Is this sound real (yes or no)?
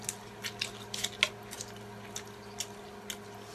yes